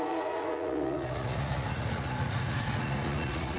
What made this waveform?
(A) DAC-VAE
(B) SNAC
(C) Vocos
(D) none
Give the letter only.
C